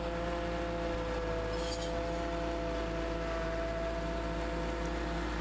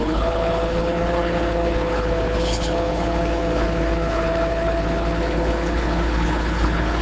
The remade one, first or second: second